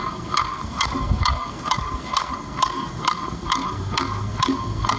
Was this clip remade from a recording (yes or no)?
yes